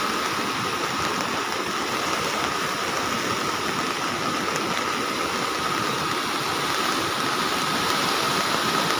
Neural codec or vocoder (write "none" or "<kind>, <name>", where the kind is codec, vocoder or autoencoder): none